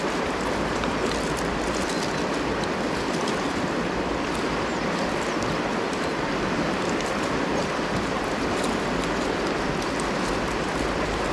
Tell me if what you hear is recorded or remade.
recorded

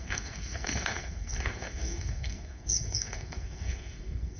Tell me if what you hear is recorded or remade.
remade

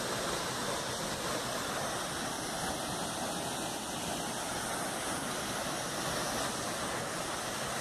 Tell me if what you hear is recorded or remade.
recorded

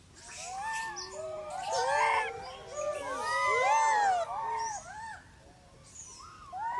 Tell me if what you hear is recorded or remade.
recorded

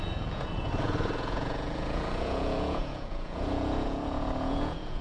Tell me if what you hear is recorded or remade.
remade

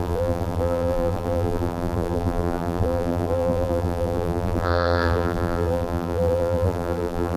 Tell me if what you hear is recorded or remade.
remade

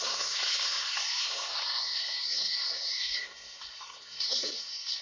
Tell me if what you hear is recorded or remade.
remade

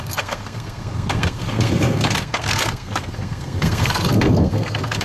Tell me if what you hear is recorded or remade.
remade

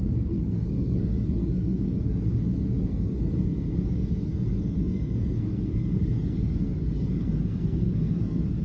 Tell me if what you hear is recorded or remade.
remade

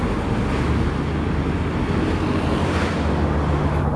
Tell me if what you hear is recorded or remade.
recorded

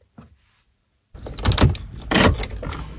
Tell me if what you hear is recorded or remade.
recorded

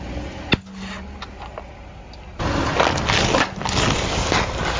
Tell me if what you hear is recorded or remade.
recorded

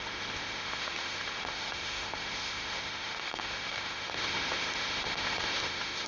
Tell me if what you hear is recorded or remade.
remade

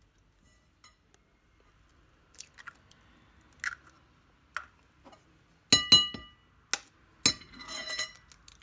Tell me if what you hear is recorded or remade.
recorded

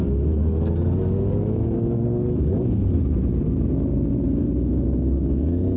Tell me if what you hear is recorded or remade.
recorded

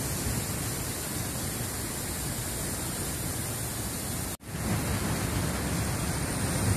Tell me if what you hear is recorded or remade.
recorded